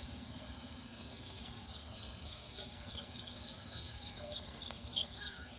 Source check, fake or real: fake